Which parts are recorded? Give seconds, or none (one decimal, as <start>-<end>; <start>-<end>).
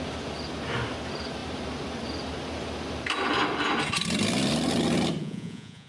0.0-5.2